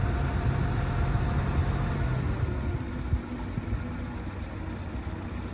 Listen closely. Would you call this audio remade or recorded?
recorded